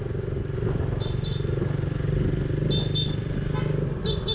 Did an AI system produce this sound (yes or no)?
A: no